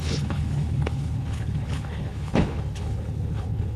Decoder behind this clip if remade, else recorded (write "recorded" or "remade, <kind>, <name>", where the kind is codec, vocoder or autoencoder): remade, codec, HILCodec